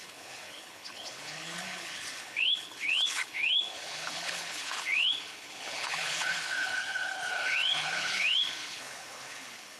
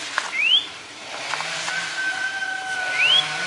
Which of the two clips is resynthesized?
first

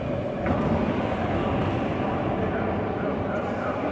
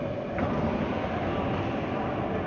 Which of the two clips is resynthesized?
first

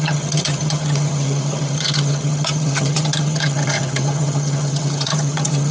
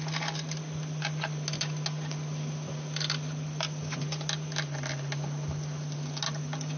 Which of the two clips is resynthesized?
first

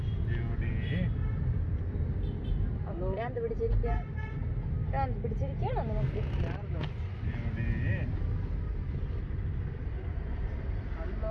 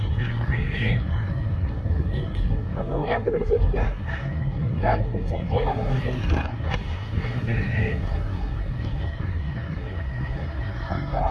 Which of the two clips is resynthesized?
second